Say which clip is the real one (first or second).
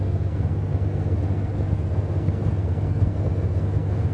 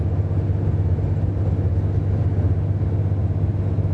second